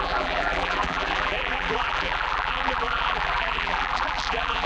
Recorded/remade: remade